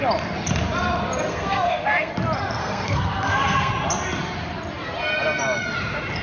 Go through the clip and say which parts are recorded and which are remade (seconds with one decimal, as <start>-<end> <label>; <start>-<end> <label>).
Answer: 0.0-1.3 recorded; 1.3-2.1 remade; 2.1-2.6 recorded; 2.6-3.7 remade; 3.7-6.2 recorded